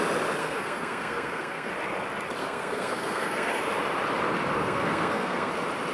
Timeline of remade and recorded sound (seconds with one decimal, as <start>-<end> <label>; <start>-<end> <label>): 0.0-0.4 recorded; 0.4-1.7 remade; 1.7-2.4 recorded; 2.4-3.5 remade; 3.5-4.6 recorded; 4.6-5.5 remade; 5.5-5.9 recorded